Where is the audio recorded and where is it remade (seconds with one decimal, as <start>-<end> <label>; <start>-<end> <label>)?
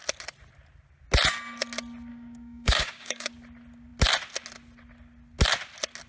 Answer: 0.0-2.1 recorded; 2.1-3.3 remade; 3.3-6.1 recorded